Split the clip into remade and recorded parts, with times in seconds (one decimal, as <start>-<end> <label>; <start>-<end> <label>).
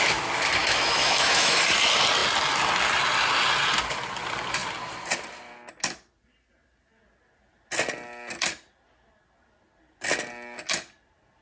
0.0-0.6 recorded; 0.6-1.6 remade; 1.6-11.4 recorded